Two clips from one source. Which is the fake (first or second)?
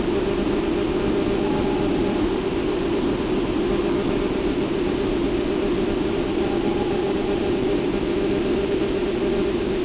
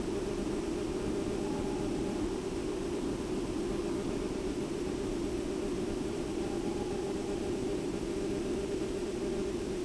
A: second